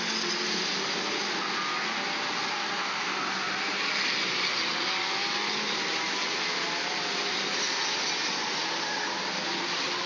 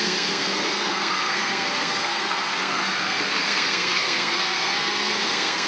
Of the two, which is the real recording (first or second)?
first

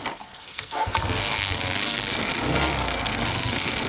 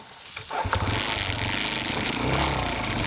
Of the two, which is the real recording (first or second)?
second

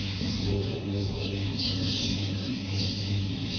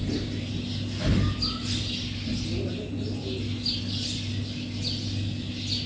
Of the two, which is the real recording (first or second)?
second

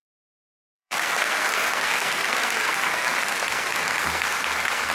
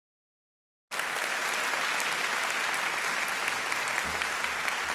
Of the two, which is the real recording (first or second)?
second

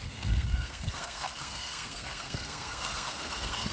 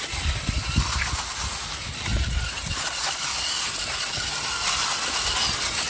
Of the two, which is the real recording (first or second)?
second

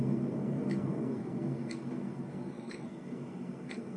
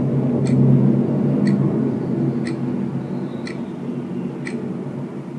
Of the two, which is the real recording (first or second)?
second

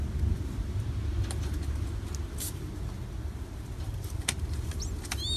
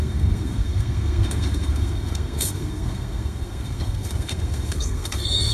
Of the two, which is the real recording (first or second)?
first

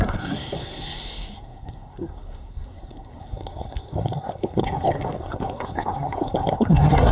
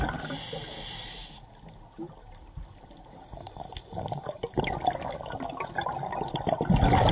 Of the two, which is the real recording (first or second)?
second